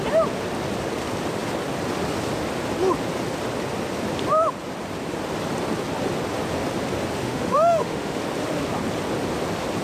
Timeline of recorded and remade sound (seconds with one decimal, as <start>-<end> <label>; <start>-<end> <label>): 0.0-7.2 recorded; 7.2-8.2 remade; 8.2-9.8 recorded